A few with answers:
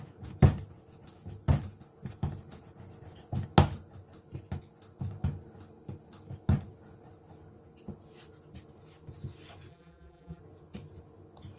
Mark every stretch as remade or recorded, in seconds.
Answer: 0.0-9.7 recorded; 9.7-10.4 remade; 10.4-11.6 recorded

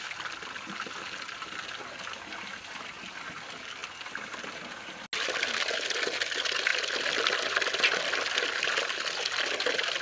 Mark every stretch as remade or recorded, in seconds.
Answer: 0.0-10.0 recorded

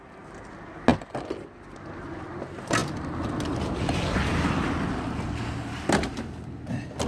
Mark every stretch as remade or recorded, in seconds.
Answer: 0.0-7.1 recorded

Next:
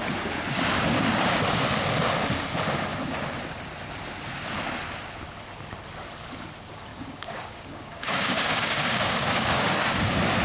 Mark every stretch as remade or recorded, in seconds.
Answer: 0.0-6.9 recorded; 6.9-10.0 remade; 10.0-10.4 recorded

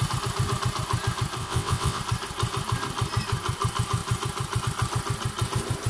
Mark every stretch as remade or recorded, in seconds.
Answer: 0.0-1.4 recorded; 1.4-2.0 remade; 2.0-5.9 recorded

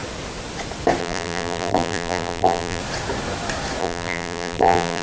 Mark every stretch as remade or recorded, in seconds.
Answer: 0.0-1.0 recorded; 1.0-2.8 remade; 2.8-3.8 recorded; 3.8-5.0 remade

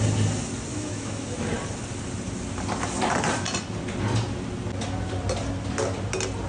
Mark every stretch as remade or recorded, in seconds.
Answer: 0.0-0.7 recorded; 0.7-1.5 remade; 1.5-6.5 recorded

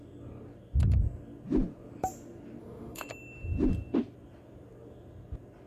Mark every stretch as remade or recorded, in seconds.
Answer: 0.0-2.6 recorded; 2.6-3.1 remade; 3.1-5.7 recorded